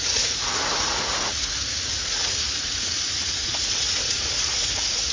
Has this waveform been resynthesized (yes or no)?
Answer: yes